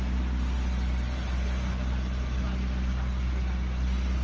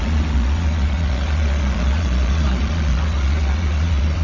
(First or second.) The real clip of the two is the first